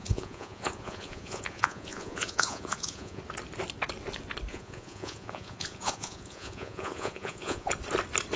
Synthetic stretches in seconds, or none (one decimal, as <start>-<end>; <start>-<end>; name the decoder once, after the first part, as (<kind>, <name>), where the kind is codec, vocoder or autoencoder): 0.0-3.2 (vocoder, Vocos); 4.5-7.7

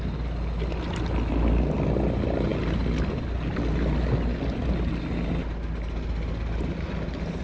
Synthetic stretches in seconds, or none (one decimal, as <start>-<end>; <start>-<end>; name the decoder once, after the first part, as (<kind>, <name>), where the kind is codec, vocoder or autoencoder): none